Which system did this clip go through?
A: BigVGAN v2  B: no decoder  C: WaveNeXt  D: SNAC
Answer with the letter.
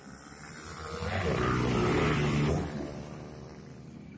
A